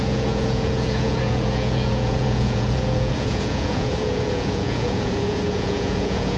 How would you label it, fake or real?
fake